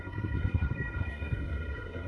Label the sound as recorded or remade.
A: remade